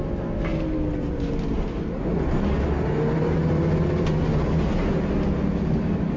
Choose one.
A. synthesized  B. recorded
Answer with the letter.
B